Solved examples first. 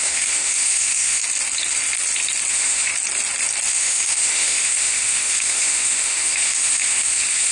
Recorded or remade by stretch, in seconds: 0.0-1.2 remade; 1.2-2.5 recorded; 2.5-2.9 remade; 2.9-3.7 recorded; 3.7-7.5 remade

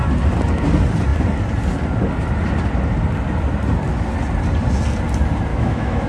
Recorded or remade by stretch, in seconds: 0.0-5.5 recorded; 5.5-6.1 remade